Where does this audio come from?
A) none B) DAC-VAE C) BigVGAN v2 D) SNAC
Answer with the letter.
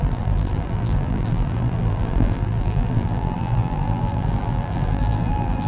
C